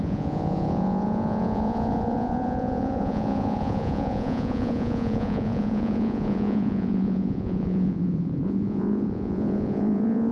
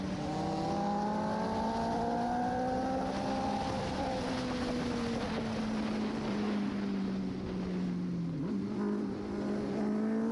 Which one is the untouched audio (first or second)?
second